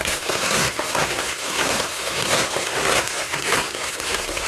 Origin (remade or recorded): remade